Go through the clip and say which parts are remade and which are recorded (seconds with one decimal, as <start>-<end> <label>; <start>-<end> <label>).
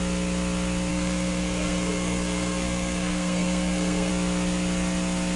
0.0-0.9 recorded; 0.9-4.1 remade; 4.1-5.4 recorded